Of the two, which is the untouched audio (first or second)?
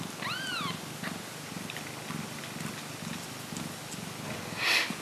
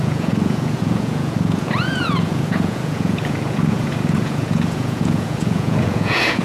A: first